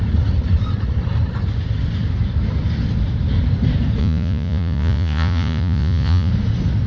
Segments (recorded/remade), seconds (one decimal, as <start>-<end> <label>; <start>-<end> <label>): 0.0-4.0 recorded; 4.0-6.3 remade; 6.3-6.9 recorded